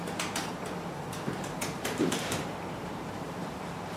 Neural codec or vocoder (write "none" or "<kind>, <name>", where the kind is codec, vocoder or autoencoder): vocoder, BigVGAN v2